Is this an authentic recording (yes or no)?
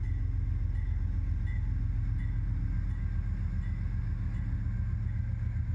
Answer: yes